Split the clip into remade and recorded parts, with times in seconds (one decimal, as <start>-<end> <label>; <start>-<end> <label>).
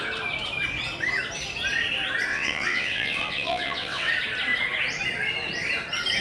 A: 0.0-2.3 recorded; 2.3-4.1 remade; 4.1-6.2 recorded